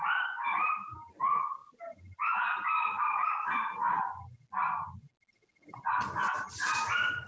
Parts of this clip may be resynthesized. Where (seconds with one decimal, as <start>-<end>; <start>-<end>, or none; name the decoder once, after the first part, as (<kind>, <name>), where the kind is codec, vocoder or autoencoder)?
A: none